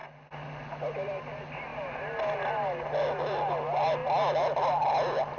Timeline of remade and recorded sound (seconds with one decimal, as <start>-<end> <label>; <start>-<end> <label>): 0.0-5.4 recorded